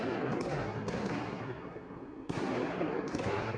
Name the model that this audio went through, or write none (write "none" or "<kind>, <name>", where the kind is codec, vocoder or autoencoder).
codec, SNAC